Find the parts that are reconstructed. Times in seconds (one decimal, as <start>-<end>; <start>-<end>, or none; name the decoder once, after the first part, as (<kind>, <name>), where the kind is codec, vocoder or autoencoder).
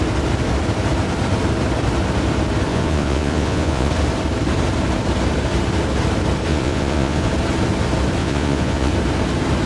2.7-3.9 (vocoder, Vocos); 6.5-7.3; 8.2-8.9